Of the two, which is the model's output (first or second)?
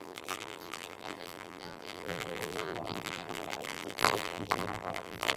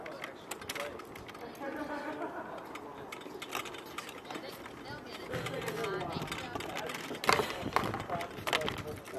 first